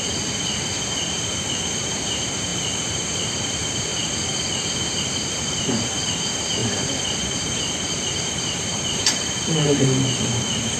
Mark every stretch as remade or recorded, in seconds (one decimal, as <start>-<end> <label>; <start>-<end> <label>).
0.0-2.5 remade; 2.5-3.2 recorded; 3.2-3.9 remade; 3.9-5.0 recorded; 5.0-10.8 remade

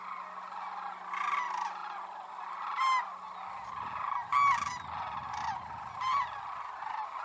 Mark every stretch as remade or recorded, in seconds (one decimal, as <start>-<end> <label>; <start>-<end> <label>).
0.0-1.8 recorded; 1.8-2.4 remade; 2.4-7.2 recorded